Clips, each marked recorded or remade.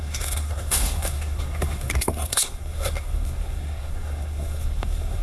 remade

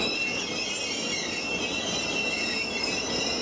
recorded